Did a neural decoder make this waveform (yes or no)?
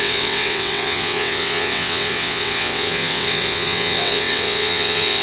yes